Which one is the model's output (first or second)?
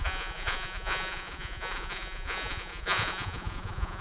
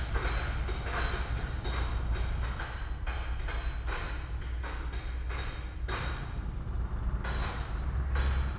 first